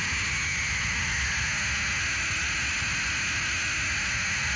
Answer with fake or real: real